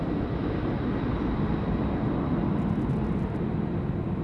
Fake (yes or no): no